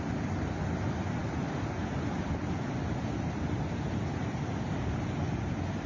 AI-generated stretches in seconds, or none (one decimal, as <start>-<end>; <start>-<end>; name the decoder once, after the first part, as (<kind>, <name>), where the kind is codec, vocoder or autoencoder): none